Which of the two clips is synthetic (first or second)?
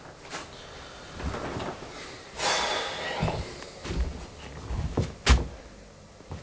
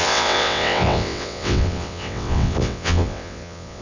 second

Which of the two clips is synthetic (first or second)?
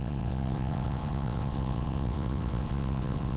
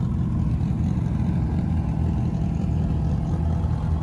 first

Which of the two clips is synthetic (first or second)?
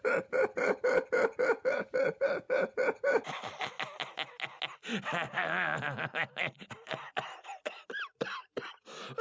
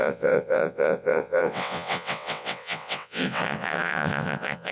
second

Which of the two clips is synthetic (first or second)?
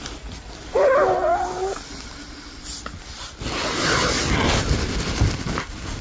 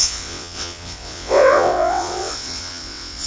second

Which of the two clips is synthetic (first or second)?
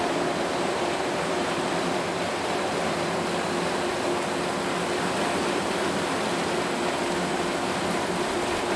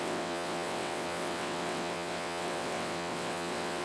second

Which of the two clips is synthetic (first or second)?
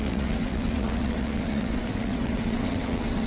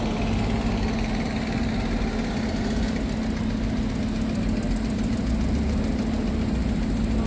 first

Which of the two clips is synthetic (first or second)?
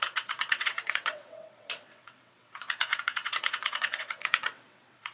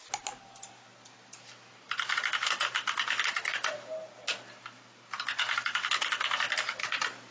first